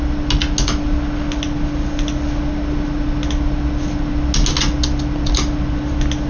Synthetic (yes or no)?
no